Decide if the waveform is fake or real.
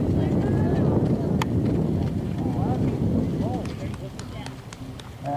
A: real